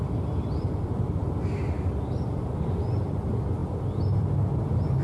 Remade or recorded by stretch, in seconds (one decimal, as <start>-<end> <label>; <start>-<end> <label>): 0.0-5.0 recorded